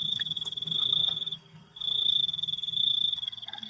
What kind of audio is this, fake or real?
fake